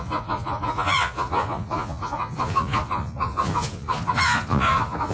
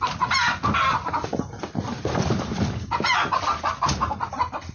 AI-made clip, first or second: first